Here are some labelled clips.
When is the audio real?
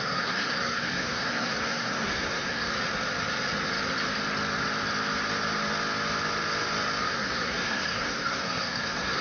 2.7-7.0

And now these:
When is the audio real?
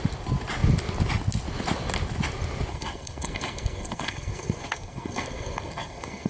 0.0-2.7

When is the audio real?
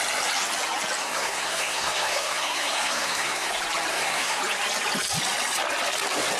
0.0-1.0; 3.5-3.9; 4.4-6.4